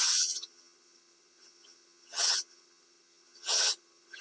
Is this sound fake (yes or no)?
yes